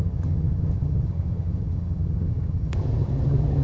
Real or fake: fake